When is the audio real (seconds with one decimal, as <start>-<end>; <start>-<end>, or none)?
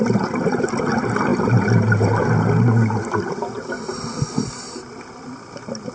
0.0-5.9